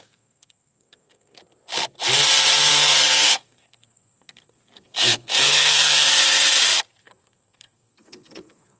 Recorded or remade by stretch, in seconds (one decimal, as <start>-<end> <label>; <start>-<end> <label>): 0.0-1.4 remade; 1.4-2.7 recorded; 2.7-6.1 remade; 6.1-7.0 recorded; 7.0-8.8 remade